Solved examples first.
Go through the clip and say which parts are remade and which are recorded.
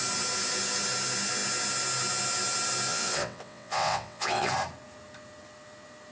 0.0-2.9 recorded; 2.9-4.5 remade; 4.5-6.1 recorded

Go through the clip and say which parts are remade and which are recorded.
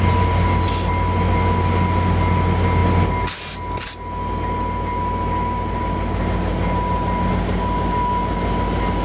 0.0-9.0 recorded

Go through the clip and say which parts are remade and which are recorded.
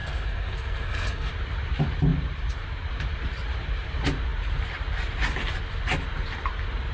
0.0-1.3 remade; 1.3-6.9 recorded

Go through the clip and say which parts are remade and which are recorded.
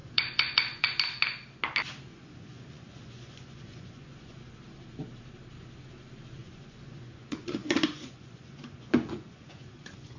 0.0-1.0 remade; 1.0-2.1 recorded; 2.1-4.4 remade; 4.4-6.4 recorded; 6.4-10.2 remade